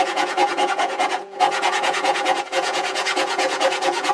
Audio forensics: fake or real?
fake